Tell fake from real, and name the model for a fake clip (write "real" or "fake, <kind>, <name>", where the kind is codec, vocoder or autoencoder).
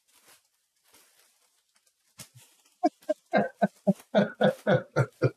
real